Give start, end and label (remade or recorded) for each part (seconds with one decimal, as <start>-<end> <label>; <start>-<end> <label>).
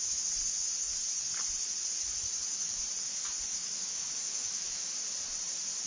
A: 0.0-3.5 recorded; 3.5-4.9 remade; 4.9-5.9 recorded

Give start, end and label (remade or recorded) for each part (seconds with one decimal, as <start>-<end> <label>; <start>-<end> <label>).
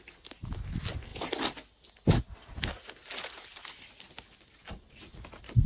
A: 0.0-5.7 recorded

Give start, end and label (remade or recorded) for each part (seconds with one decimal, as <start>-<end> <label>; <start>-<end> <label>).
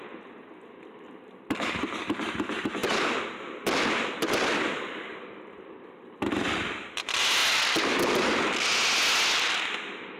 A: 0.0-10.2 recorded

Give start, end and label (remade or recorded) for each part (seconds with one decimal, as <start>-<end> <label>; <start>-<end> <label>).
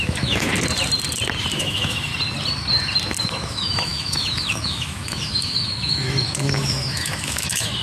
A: 0.0-0.5 remade; 0.5-1.5 recorded; 1.5-2.1 remade; 2.1-3.2 recorded; 3.2-7.8 remade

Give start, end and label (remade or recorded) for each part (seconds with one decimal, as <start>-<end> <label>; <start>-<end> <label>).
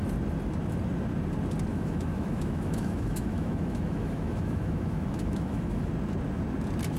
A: 0.0-1.7 recorded; 1.7-5.9 remade; 5.9-7.0 recorded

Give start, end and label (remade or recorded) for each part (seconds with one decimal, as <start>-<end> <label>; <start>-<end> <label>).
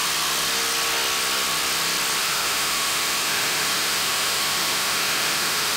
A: 0.0-2.2 recorded; 2.2-5.8 remade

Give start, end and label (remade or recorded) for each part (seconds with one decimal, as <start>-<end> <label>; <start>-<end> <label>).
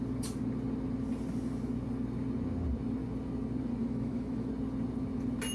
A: 0.0-3.8 recorded; 3.8-4.5 remade; 4.5-5.5 recorded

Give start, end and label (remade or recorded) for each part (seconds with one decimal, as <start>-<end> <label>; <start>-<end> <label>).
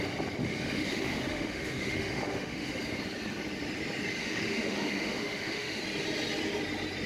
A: 0.0-0.4 recorded; 0.4-2.7 remade; 2.7-4.2 recorded; 4.2-5.8 remade; 5.8-7.1 recorded